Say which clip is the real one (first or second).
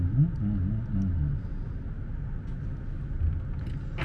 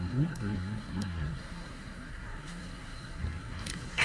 first